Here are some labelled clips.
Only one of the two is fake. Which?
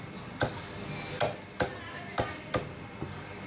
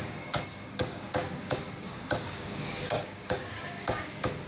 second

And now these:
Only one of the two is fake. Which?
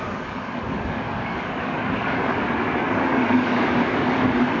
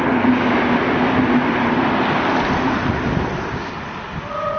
first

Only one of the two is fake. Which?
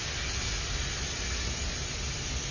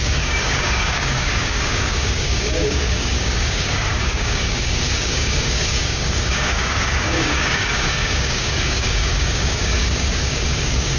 second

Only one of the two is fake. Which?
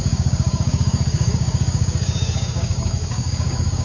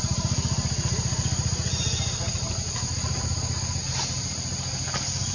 first